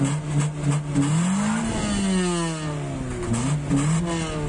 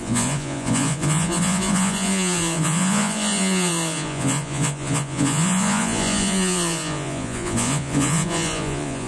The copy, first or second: second